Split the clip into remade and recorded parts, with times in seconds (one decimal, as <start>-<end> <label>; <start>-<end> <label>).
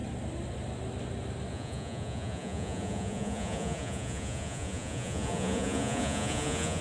0.0-1.5 recorded; 1.5-6.8 remade